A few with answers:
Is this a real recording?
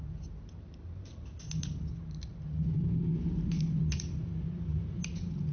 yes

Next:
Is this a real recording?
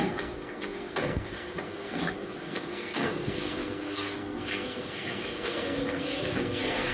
no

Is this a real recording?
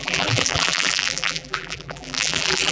no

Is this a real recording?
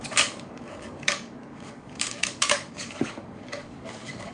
no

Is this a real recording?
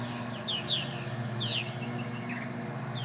yes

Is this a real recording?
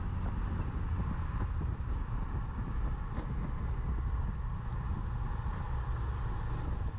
yes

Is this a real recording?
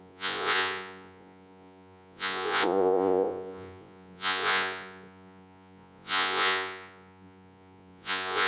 no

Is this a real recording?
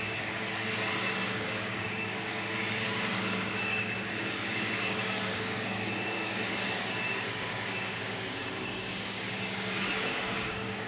no